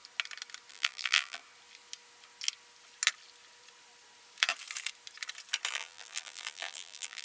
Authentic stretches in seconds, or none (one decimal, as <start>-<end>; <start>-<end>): 0.0-0.7; 1.4-5.7